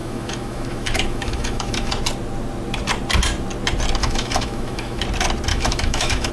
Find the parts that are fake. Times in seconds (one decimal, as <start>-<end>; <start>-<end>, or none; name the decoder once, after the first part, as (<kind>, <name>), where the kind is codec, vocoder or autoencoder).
0.0-1.9 (autoencoder, DAC-VAE); 4.0-5.0; 5.5-6.3